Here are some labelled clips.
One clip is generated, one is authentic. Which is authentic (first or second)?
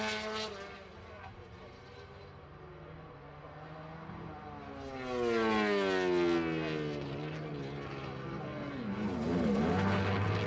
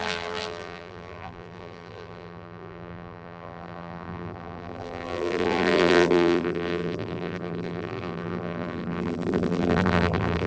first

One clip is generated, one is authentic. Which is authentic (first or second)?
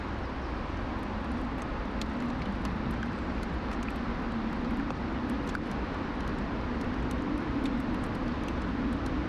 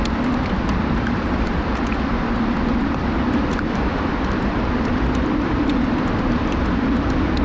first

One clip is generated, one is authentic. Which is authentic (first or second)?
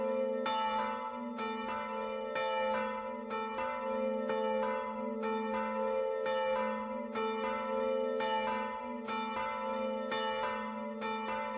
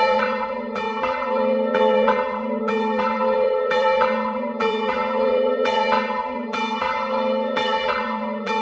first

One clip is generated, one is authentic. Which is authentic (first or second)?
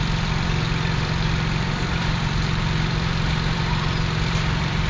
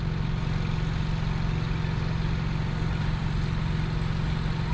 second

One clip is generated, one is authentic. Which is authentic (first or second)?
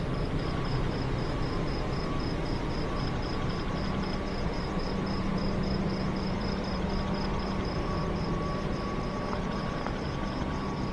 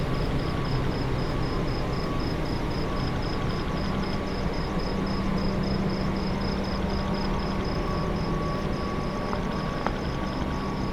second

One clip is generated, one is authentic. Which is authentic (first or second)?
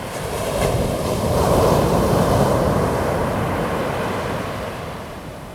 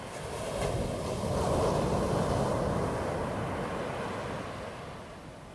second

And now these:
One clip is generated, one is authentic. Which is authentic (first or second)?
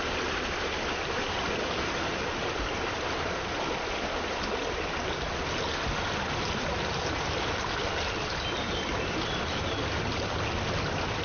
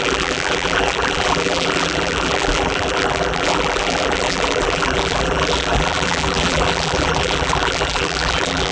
first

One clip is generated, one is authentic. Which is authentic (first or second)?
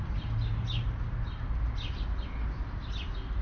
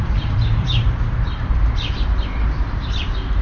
first